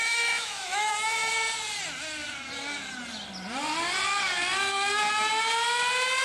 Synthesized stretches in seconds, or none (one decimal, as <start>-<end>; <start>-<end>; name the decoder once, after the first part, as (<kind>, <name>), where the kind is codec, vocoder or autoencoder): 0.0-1.3 (autoencoder, DAC-VAE)